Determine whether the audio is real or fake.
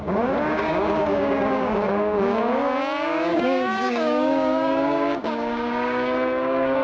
fake